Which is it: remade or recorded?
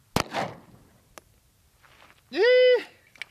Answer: recorded